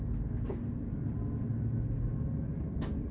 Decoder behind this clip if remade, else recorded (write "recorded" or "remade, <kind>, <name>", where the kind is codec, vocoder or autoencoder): recorded